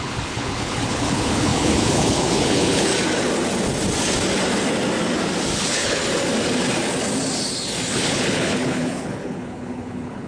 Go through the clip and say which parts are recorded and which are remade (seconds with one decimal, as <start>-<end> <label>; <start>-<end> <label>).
0.0-2.9 remade; 2.9-5.6 recorded; 5.6-6.0 remade; 6.0-7.9 recorded; 7.9-10.3 remade